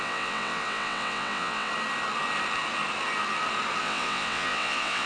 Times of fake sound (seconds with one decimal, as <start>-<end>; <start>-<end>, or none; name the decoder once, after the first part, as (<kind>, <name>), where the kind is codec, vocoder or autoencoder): 0.0-1.7 (vocoder, WaveNeXt); 3.8-5.1

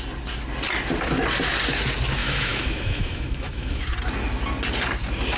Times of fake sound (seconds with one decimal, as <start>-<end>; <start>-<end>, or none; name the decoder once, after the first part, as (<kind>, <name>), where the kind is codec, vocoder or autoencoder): 2.2-3.8 (autoencoder, DAC-VAE)

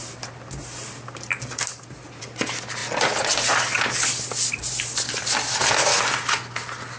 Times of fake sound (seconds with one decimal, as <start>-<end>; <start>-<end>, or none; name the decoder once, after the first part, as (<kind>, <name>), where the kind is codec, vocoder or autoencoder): none

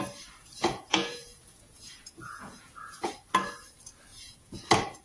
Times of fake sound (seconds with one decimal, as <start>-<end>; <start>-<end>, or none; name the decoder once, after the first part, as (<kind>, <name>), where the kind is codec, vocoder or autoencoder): 0.4-3.1 (vocoder, Vocos); 4.1-4.6